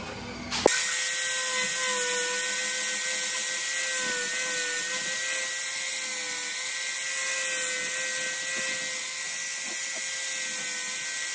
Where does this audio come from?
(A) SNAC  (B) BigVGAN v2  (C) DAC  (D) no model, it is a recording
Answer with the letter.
D